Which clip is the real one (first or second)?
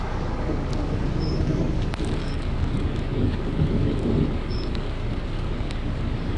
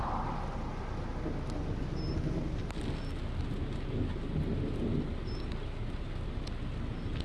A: second